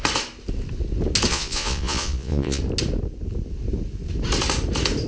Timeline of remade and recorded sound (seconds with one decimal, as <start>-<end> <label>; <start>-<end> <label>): 0.0-1.3 recorded; 1.3-2.6 remade; 2.6-5.1 recorded